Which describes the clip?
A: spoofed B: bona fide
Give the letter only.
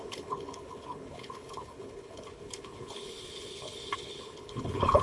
A